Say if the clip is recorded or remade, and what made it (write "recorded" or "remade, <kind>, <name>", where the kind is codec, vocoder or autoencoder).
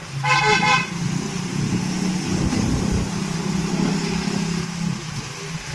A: recorded